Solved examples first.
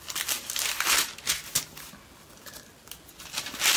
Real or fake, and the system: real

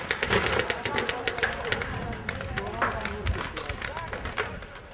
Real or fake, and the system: real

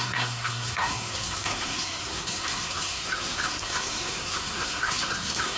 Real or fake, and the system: fake, codec, SNAC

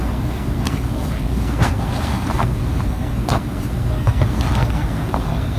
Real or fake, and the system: fake, codec, SNAC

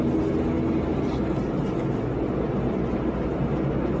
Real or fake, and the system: real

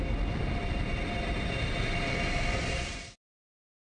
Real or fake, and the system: real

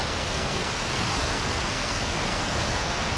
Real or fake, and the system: fake, codec, SNAC